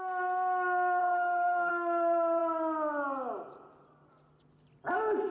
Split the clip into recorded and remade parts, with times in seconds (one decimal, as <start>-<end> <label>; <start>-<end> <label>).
0.0-1.0 recorded; 1.0-1.7 remade; 1.7-5.3 recorded